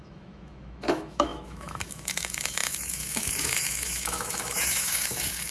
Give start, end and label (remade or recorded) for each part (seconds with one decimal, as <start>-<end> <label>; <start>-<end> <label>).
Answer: 0.0-5.5 remade